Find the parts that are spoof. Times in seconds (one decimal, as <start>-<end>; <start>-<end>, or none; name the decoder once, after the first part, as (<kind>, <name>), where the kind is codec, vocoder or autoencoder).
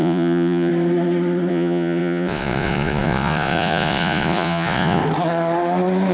0.0-0.7 (vocoder, Vocos); 1.5-5.0